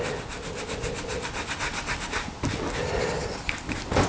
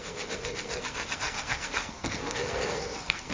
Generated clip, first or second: second